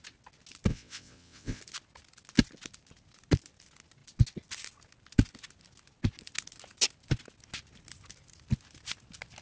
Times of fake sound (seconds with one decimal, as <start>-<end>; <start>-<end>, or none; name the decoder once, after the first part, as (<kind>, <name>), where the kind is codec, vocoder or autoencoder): 0.7-1.6 (vocoder, WaveNeXt)